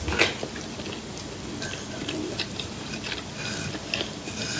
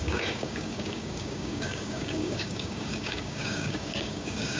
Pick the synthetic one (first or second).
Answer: second